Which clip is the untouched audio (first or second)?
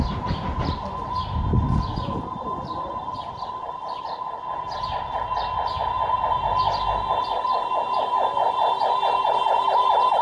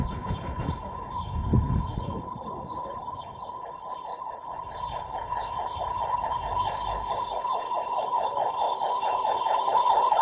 first